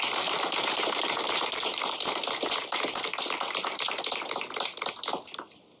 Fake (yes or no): yes